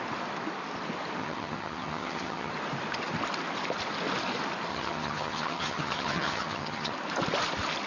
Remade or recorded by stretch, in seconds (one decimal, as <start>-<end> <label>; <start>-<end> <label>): 0.0-1.2 recorded; 1.2-2.5 remade; 2.5-4.7 recorded; 4.7-6.9 remade; 6.9-7.9 recorded